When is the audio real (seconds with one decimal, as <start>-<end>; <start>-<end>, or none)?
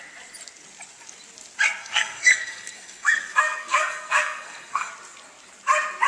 0.0-1.8; 4.9-6.1